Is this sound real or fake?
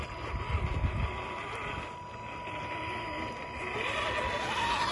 real